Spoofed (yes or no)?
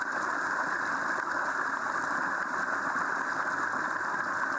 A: no